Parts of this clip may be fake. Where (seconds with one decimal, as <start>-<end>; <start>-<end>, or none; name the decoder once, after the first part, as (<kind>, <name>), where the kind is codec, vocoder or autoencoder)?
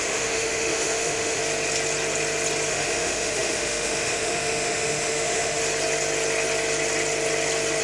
0.0-1.4 (autoencoder, DAC-VAE); 2.7-5.6